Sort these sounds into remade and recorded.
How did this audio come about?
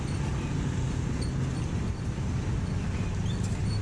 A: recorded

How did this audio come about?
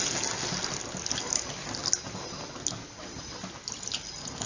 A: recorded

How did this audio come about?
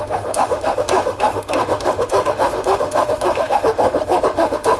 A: remade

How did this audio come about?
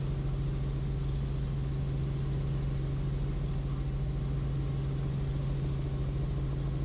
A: recorded